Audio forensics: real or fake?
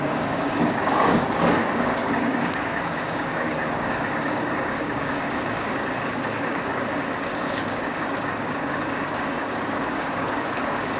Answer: fake